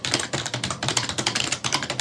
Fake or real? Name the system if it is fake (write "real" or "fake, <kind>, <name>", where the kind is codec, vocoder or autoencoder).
fake, vocoder, BigVGAN v2